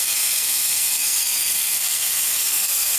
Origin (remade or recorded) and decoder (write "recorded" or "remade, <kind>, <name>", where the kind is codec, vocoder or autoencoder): remade, codec, SNAC